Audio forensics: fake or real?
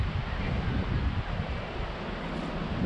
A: real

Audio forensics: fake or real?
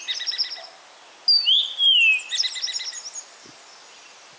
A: real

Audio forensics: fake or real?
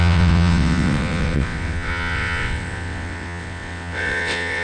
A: fake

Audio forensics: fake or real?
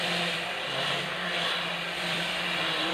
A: fake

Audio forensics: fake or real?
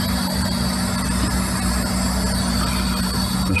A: real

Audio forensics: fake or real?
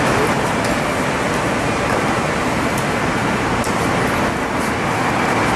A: real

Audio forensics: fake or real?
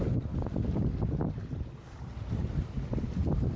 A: real